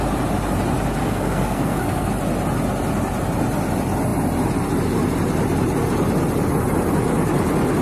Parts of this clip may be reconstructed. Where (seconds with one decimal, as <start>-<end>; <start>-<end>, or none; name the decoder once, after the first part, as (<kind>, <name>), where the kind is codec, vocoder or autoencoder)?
1.0-2.1 (codec, SNAC)